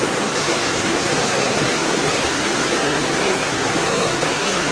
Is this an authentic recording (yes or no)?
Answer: no